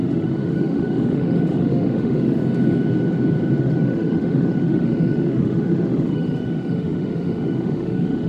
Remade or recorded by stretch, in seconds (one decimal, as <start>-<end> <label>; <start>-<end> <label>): 0.0-2.4 remade; 2.4-3.6 recorded; 3.6-8.3 remade